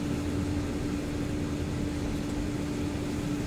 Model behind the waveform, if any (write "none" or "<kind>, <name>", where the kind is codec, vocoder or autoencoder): none